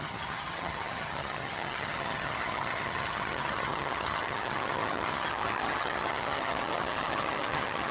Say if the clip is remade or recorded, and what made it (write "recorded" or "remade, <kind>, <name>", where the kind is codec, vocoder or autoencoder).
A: remade, vocoder, HiFi-GAN